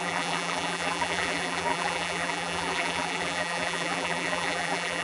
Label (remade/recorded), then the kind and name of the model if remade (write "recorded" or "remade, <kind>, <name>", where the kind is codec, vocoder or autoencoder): remade, vocoder, BigVGAN v2